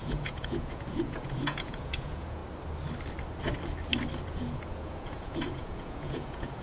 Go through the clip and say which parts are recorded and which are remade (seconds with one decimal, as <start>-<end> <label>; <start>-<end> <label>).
0.0-2.4 remade; 2.4-4.3 recorded; 4.3-6.6 remade